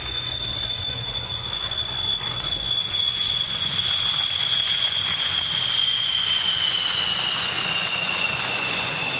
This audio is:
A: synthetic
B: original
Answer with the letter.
A